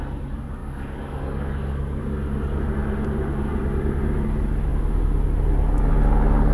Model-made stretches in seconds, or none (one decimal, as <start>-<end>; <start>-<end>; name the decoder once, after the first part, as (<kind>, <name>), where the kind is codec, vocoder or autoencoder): 0.6-2.0 (codec, DAC)